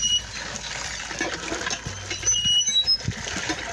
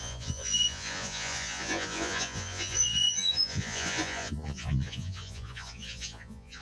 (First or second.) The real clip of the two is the first